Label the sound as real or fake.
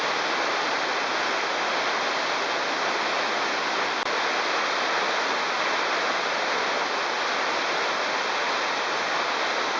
real